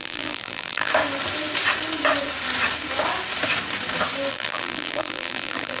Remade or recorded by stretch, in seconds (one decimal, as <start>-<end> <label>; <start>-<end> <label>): 0.0-0.9 remade; 0.9-4.3 recorded; 4.3-5.8 remade